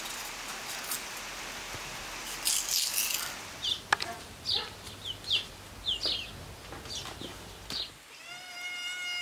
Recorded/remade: recorded